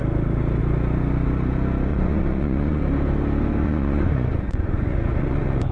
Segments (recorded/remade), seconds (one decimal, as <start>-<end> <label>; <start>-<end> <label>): 0.0-1.9 recorded; 1.9-2.8 remade; 2.8-3.6 recorded; 3.6-5.7 remade